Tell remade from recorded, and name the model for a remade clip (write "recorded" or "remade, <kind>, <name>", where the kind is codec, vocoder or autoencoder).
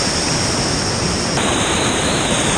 remade, vocoder, BigVGAN v2